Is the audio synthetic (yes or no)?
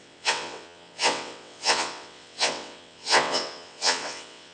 yes